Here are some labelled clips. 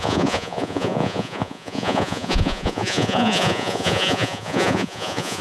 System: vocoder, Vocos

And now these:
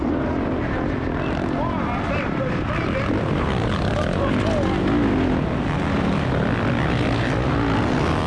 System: none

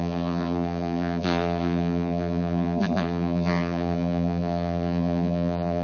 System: vocoder, BigVGAN v2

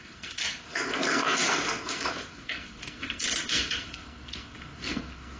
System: codec, SNAC